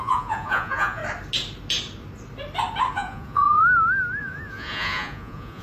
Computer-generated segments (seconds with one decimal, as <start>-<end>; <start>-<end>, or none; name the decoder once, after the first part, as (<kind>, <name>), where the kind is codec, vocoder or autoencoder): 0.0-1.0 (vocoder, Vocos); 2.9-3.6; 4.2-5.6